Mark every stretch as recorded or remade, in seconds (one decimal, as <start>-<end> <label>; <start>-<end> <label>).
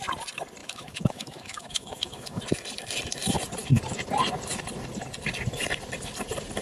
0.0-0.6 recorded; 0.6-2.4 remade; 2.4-6.6 recorded